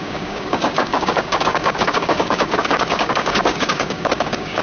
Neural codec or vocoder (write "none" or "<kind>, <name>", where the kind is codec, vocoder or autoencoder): codec, DAC